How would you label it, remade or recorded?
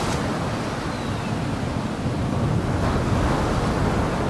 recorded